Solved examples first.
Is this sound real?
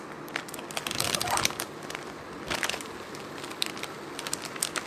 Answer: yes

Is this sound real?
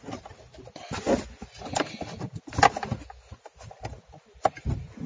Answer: yes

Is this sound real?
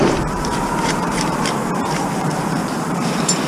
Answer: no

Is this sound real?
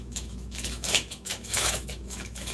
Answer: no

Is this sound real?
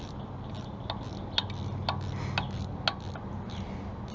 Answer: yes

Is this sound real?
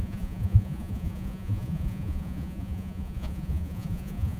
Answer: no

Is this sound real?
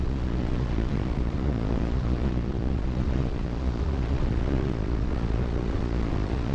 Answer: no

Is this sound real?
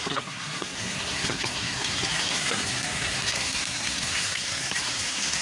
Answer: no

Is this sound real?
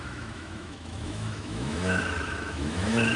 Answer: no